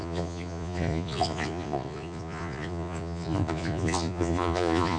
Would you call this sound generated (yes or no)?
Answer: yes